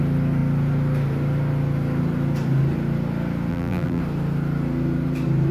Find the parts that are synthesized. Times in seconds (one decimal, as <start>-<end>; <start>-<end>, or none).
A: 3.5-4.0